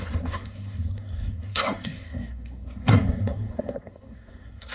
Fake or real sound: fake